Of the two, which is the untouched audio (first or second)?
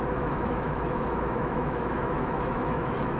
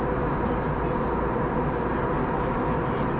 second